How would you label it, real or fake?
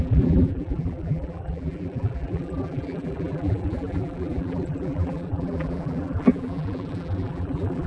fake